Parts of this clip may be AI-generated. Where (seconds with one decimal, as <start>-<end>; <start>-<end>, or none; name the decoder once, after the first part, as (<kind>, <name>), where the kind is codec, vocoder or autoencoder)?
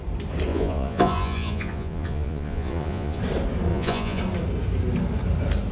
0.5-3.2 (vocoder, Vocos); 3.7-4.2